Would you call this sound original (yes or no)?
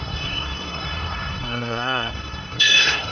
no